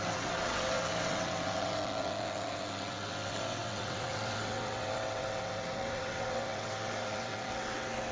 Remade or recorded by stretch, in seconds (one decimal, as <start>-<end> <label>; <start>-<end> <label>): 0.0-8.1 remade